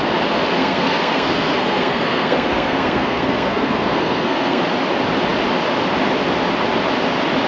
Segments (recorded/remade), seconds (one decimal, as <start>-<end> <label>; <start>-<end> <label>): 0.0-0.6 recorded; 0.6-4.6 remade; 4.6-7.5 recorded